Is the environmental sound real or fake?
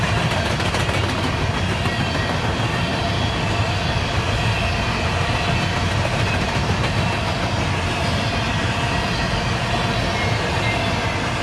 real